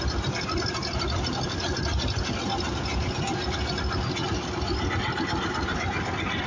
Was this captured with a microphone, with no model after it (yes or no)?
yes